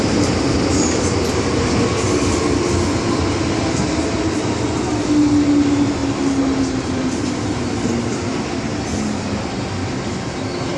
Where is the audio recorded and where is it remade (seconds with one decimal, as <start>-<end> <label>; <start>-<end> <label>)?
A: 0.0-10.8 recorded

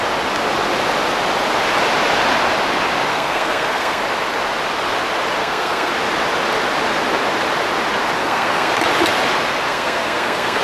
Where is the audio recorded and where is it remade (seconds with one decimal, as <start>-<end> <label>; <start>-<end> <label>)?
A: 0.0-3.1 recorded; 3.1-4.0 remade; 4.0-5.4 recorded; 5.4-5.9 remade; 5.9-8.2 recorded; 8.2-8.7 remade; 8.7-9.7 recorded; 9.7-10.6 remade

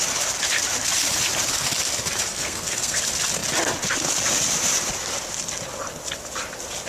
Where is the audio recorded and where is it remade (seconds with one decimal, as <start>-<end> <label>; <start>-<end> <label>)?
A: 0.0-2.3 recorded; 2.3-3.0 remade; 3.0-6.9 recorded

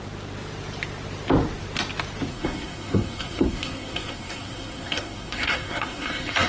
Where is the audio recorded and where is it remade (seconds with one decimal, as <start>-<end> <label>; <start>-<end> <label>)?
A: 0.0-2.3 recorded; 2.3-6.5 remade